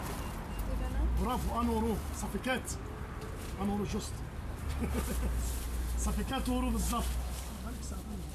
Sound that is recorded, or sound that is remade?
recorded